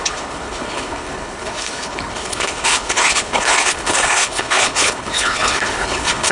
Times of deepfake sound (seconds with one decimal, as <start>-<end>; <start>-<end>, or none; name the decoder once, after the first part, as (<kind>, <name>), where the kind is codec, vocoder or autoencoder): 0.0-6.3 (codec, HILCodec)